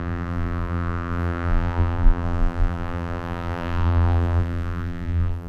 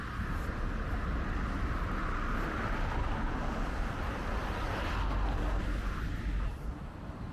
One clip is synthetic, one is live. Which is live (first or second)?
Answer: second